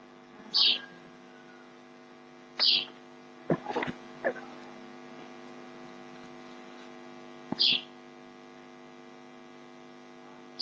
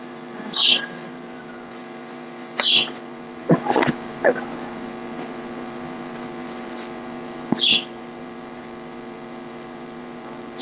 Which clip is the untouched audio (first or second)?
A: first